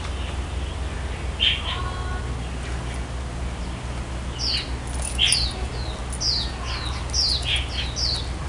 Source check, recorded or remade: recorded